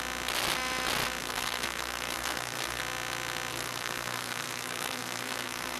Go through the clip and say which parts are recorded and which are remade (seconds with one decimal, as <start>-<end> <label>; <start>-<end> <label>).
0.0-1.2 recorded; 1.2-2.8 remade; 2.8-3.5 recorded; 3.5-5.8 remade